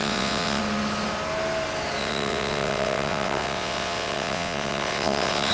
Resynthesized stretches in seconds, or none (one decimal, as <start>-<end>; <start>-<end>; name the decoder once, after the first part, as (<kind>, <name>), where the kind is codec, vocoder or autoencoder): 0.0-0.6 (vocoder, WaveNeXt); 2.0-5.5

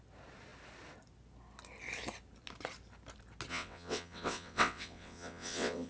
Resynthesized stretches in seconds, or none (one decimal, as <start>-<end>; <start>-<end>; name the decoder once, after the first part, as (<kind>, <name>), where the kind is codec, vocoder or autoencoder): 3.5-5.9 (vocoder, WaveNeXt)

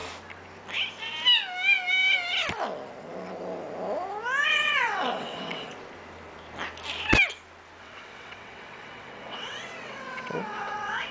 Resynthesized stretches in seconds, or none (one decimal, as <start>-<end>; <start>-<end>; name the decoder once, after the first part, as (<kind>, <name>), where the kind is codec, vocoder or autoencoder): 4.5-5.7 (vocoder, WaveNeXt); 7.8-11.1

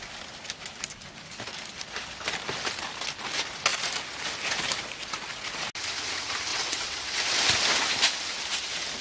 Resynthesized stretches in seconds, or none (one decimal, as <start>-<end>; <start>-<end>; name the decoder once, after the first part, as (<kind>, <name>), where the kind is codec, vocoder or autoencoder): 6.5-7.2 (vocoder, WaveNeXt)

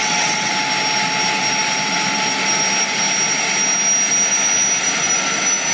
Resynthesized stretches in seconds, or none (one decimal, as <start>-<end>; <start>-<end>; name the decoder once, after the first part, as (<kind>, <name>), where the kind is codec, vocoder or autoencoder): 0.0-0.5 (vocoder, WaveNeXt)

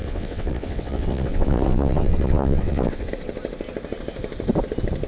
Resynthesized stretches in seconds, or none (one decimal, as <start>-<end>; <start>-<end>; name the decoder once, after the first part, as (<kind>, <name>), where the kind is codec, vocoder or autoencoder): 0.0-3.1 (vocoder, WaveNeXt)

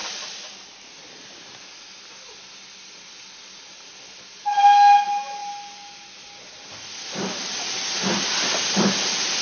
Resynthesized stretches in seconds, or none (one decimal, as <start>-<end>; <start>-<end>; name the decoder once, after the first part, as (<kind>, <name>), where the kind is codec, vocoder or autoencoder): none

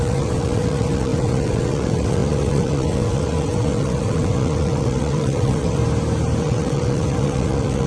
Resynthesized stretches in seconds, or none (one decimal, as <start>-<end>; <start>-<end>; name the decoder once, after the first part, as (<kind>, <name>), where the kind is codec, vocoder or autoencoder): 0.0-5.8 (vocoder, WaveNeXt); 6.4-7.9